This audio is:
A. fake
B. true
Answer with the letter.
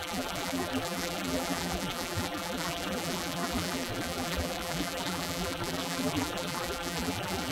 A